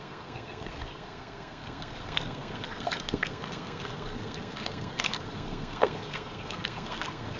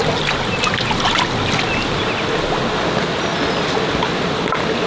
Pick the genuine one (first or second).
second